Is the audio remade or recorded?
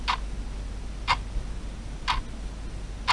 recorded